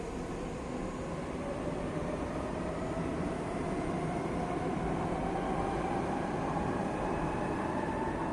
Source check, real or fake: real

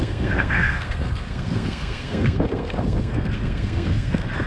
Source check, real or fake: fake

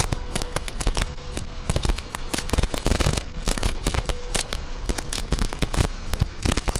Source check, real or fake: fake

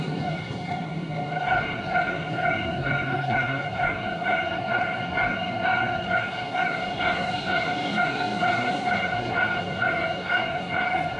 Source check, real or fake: fake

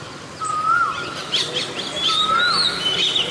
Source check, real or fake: real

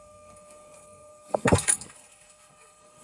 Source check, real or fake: fake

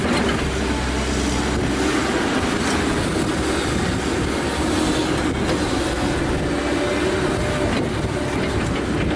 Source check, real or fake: real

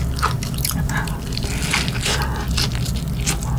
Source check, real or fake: real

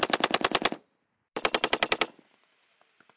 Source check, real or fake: real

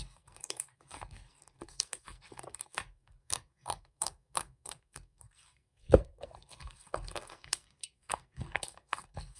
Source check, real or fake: fake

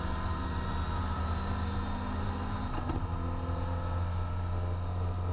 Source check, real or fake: real